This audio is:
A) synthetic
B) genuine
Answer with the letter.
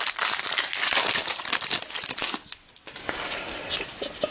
B